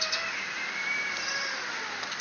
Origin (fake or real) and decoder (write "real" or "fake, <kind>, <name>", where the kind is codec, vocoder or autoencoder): fake, vocoder, BigVGAN v2